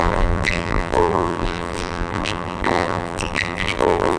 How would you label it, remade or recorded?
remade